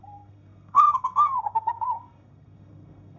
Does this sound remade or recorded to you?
remade